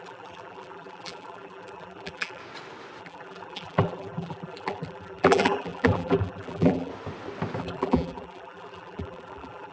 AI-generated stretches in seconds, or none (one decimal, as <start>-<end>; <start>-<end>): 0.0-2.4; 3.0-6.9; 7.6-9.7